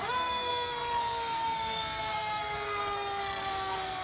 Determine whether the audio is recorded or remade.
remade